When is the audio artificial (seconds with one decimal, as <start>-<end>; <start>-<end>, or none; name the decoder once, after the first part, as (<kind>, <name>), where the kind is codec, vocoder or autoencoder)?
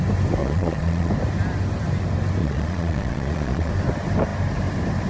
0.4-1.1 (vocoder, Vocos); 2.4-3.7